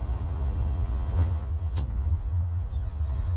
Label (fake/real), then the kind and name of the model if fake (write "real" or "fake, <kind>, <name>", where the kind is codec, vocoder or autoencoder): fake, vocoder, Vocos